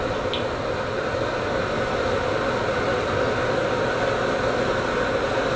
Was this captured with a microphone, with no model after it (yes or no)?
yes